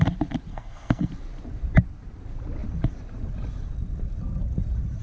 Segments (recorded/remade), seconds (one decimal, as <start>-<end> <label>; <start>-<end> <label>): 0.0-0.5 recorded; 0.5-1.1 remade; 1.1-5.0 recorded